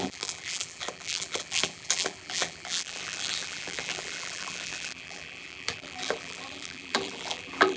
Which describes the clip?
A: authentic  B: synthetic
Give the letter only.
B